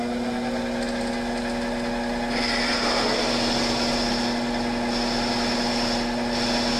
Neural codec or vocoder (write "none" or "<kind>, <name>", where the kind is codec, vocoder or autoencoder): none